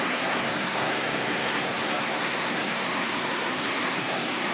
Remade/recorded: remade